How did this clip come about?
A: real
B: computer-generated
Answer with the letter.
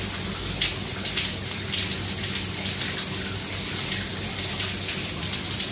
A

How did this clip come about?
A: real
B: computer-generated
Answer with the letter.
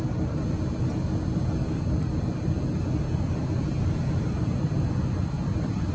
A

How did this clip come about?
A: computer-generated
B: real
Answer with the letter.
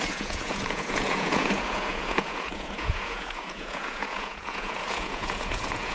A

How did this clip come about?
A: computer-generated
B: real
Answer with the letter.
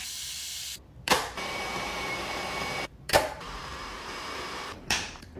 A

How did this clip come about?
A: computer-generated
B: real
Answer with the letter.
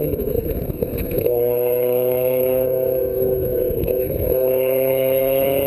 A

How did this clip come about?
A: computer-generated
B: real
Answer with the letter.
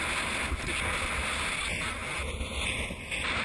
B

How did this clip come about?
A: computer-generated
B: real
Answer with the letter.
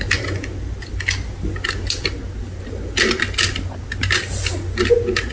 B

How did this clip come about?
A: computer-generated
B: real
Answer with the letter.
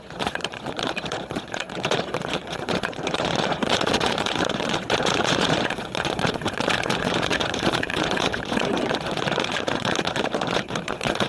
A